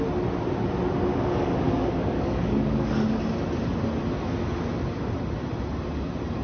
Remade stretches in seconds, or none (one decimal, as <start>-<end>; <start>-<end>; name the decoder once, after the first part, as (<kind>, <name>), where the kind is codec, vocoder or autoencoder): 1.1-3.2 (codec, DAC)